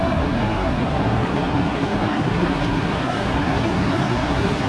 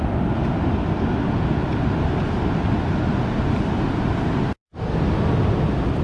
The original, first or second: second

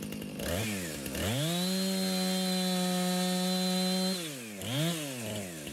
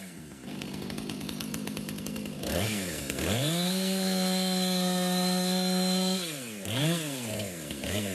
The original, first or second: first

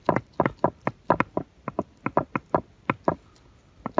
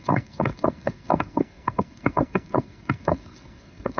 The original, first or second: first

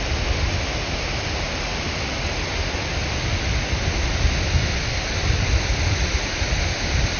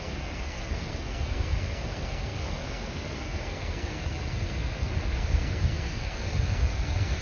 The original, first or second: first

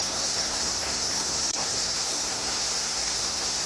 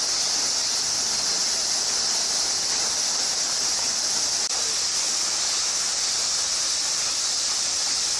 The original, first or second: second